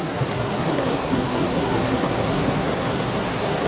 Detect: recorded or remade remade